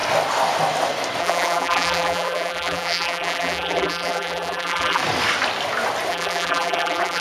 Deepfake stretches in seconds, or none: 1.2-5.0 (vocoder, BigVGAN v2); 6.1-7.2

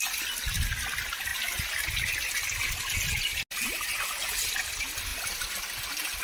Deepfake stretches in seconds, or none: none

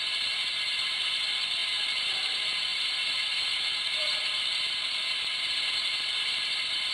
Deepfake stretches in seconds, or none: 0.0-6.9 (vocoder, BigVGAN v2)

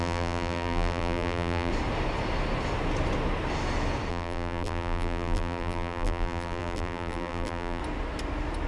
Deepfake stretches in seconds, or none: 0.0-1.7 (vocoder, BigVGAN v2); 4.1-7.8

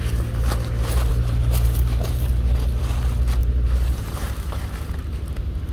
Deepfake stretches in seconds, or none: 1.1-2.3 (vocoder, BigVGAN v2); 3.4-5.7